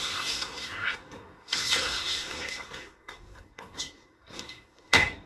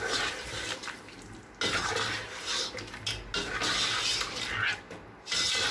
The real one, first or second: second